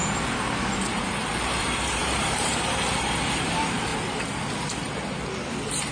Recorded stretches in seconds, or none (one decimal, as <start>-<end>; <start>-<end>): 0.0-1.0; 3.9-4.6